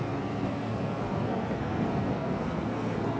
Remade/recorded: remade